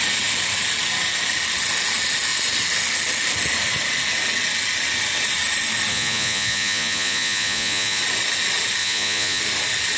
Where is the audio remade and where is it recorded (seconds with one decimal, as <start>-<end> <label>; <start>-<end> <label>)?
0.0-5.9 recorded; 5.9-8.0 remade; 8.0-8.8 recorded; 8.8-9.4 remade; 9.4-10.0 recorded